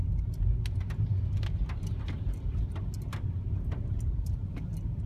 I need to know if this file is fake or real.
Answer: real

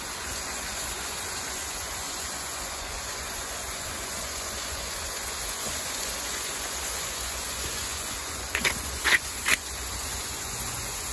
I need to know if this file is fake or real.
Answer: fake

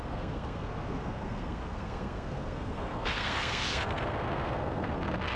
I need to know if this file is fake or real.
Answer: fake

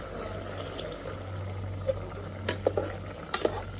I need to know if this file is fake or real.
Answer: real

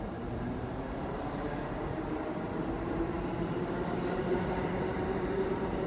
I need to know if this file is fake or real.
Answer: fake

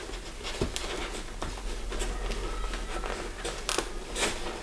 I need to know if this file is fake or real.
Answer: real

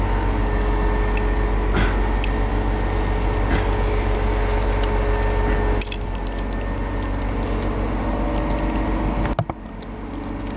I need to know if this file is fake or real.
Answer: real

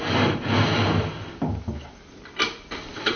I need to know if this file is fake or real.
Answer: real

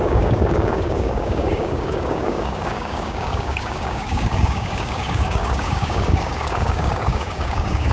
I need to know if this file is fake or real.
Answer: fake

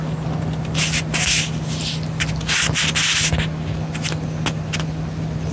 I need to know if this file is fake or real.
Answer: real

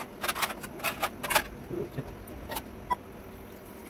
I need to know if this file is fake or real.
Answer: real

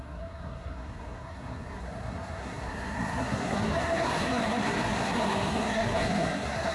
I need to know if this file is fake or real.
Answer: fake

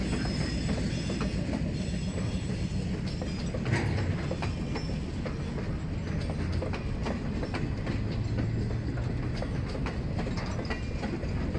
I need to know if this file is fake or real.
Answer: real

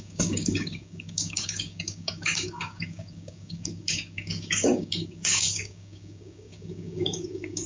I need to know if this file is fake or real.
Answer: fake